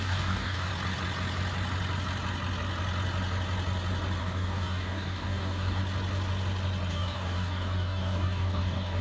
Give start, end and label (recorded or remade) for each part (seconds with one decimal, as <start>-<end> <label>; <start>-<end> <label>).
0.0-0.7 remade; 0.7-4.2 recorded; 4.2-5.8 remade; 5.8-6.9 recorded; 6.9-9.0 remade